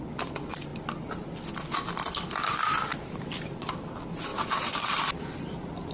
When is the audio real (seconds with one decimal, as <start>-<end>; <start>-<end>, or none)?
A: 0.0-2.9; 3.8-4.3